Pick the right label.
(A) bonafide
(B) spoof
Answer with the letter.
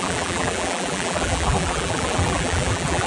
B